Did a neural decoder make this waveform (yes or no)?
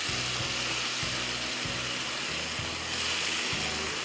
no